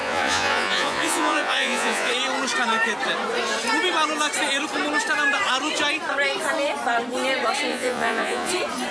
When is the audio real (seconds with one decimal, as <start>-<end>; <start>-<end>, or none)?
2.1-7.7; 8.5-8.9